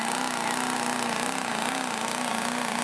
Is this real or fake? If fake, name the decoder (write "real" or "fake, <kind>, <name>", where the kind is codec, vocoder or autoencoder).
real